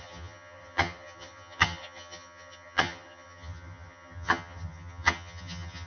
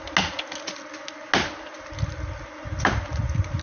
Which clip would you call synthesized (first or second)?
first